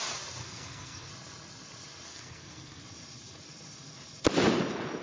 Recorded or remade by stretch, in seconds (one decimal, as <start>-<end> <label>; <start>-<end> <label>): 0.0-0.4 recorded; 0.4-1.1 remade; 1.1-2.1 recorded; 2.1-2.8 remade; 2.8-5.0 recorded